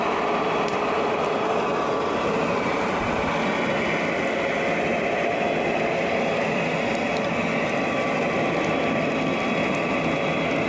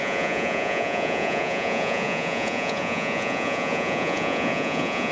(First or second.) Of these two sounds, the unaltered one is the first